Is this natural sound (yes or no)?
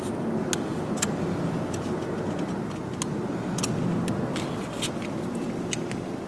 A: yes